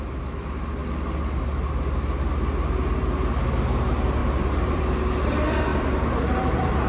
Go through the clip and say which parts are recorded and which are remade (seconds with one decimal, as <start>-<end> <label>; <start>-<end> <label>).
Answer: 0.0-4.2 recorded; 4.2-4.8 remade; 4.8-5.7 recorded; 5.7-6.9 remade

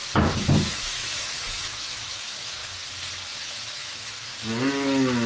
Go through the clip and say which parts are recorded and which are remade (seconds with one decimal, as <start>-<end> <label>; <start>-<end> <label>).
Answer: 0.0-0.7 recorded; 0.7-2.6 remade; 2.6-3.4 recorded; 3.4-4.3 remade; 4.3-5.3 recorded

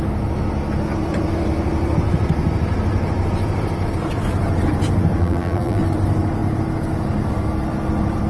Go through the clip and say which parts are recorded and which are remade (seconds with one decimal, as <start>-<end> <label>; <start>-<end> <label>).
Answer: 0.0-5.2 recorded; 5.2-5.8 remade; 5.8-8.3 recorded

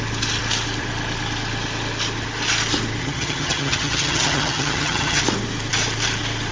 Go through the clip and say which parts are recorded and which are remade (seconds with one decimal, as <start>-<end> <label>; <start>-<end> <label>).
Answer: 0.0-3.0 recorded; 3.0-5.2 remade; 5.2-6.5 recorded

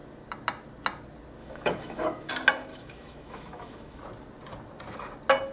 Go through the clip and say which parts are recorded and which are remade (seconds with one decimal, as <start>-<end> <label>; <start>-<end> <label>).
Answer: 0.0-1.4 recorded; 1.4-2.3 remade; 2.3-2.7 recorded; 2.7-4.0 remade; 4.0-5.5 recorded

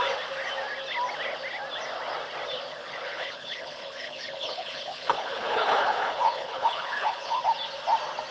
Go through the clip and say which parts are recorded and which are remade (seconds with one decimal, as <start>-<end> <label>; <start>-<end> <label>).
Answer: 0.0-2.7 recorded; 2.7-7.4 remade; 7.4-8.3 recorded